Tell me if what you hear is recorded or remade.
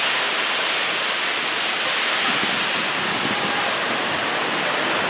recorded